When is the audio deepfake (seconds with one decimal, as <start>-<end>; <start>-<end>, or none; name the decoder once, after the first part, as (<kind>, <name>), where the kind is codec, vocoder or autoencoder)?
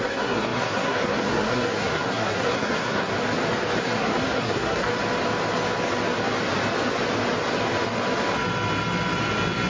0.0-3.1 (codec, SNAC); 3.8-4.9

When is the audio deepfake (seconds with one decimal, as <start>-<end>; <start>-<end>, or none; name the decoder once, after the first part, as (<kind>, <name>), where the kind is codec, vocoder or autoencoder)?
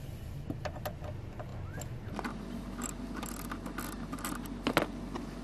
none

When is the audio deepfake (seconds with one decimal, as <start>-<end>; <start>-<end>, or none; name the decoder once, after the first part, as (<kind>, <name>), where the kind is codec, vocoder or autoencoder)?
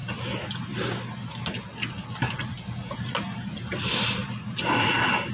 none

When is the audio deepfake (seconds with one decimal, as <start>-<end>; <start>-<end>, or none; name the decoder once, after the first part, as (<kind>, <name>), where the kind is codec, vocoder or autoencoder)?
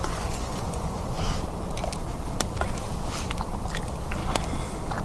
0.0-1.2 (vocoder, Vocos)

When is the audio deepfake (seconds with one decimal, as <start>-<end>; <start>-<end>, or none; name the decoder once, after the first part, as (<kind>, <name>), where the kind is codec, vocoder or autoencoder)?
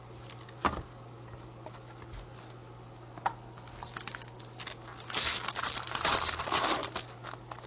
none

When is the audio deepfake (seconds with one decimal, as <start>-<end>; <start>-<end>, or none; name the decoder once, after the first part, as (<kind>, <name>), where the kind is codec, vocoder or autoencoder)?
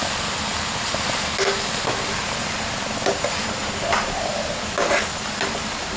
none